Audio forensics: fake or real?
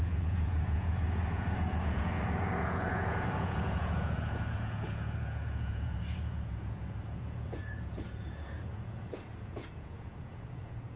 fake